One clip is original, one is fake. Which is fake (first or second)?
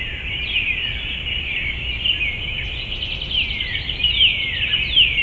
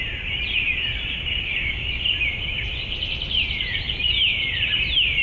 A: second